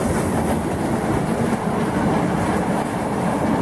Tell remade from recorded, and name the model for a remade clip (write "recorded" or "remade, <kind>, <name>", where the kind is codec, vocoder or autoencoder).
recorded